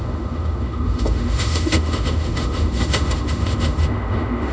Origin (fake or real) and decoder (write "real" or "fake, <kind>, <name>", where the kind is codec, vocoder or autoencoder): fake, autoencoder, DAC-VAE